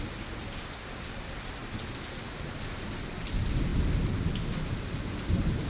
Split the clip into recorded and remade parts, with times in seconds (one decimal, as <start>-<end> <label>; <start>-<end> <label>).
0.0-5.7 recorded